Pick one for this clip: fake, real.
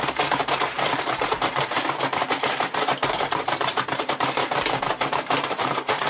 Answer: fake